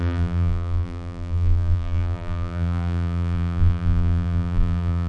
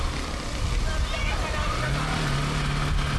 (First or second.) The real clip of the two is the second